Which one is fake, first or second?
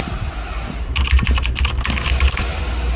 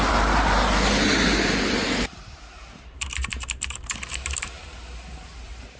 second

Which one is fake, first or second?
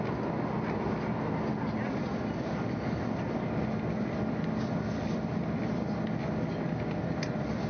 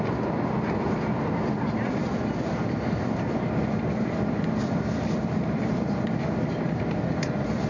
second